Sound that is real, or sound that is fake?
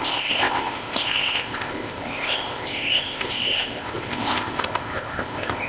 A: fake